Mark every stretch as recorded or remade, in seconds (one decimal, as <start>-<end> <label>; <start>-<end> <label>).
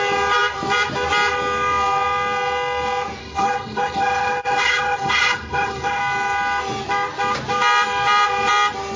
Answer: 0.0-3.2 recorded; 3.2-6.0 remade; 6.0-9.0 recorded